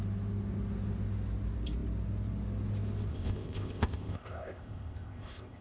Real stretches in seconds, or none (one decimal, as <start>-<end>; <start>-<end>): 0.0-3.1